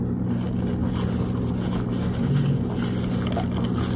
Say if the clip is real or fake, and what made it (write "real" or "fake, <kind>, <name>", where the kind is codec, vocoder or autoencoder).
real